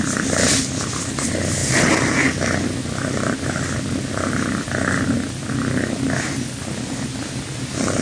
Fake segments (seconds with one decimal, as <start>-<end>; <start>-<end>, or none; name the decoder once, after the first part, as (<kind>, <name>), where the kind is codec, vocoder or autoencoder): none